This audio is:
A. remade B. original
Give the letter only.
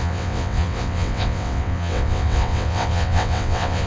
A